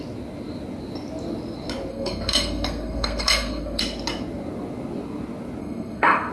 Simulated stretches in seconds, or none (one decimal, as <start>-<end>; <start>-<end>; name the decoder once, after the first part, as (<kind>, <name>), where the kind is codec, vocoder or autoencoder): 1.9-3.8 (codec, SNAC); 5.6-6.3